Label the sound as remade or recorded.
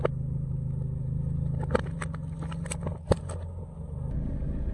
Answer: recorded